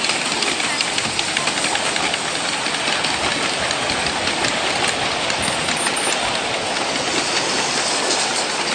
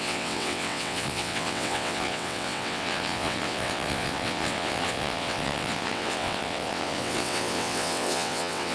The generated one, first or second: second